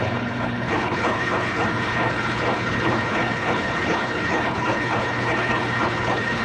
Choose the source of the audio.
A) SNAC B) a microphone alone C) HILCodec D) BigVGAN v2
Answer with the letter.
C